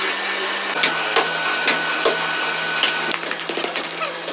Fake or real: real